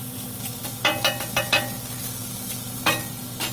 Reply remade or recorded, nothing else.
recorded